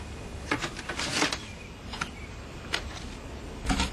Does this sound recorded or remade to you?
recorded